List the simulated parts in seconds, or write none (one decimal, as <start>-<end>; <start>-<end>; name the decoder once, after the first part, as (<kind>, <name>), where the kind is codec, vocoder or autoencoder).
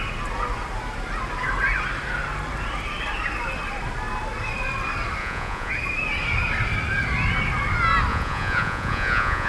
5.2-5.7 (vocoder, Vocos); 8.1-9.5